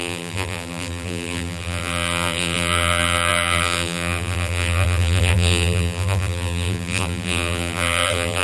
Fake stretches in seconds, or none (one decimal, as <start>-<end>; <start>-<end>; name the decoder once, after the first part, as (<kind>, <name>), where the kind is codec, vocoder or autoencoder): 0.0-8.4 (vocoder, BigVGAN v2)